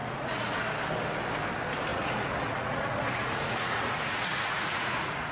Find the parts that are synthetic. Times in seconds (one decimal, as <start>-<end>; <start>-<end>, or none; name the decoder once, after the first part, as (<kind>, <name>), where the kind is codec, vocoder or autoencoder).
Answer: 0.0-0.6 (vocoder, Vocos); 1.9-5.3